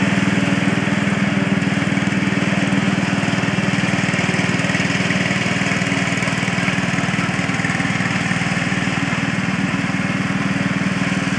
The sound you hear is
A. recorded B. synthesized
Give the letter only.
A